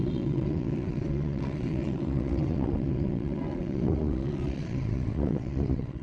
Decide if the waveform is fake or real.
fake